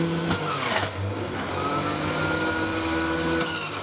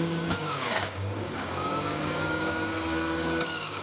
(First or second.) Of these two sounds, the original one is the first